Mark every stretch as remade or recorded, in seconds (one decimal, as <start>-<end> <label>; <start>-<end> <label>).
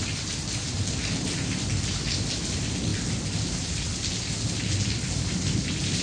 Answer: 0.0-6.0 recorded